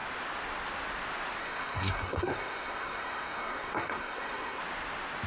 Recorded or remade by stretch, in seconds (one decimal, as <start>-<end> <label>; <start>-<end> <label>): 0.0-1.4 recorded; 1.4-4.6 remade; 4.6-5.3 recorded